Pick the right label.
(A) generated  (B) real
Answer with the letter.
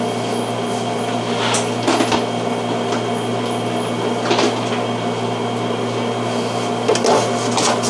B